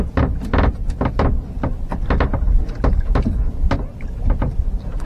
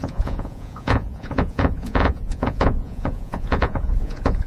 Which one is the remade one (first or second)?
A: second